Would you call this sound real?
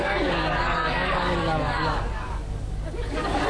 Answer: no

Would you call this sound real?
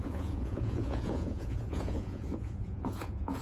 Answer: no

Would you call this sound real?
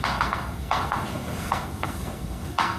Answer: no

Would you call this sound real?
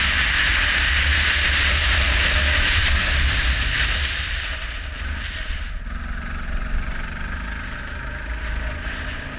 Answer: yes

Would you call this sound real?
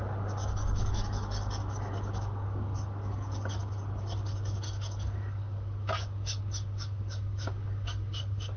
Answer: no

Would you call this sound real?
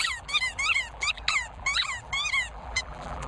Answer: no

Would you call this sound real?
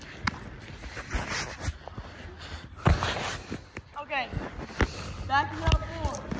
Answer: yes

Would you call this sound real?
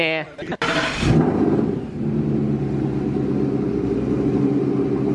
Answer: yes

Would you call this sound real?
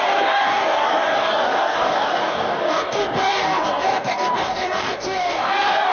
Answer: no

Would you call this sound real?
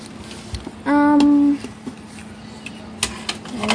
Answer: yes